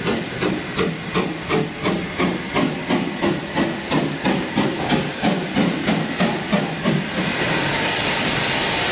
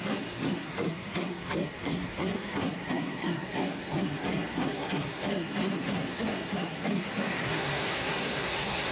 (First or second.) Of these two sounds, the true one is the first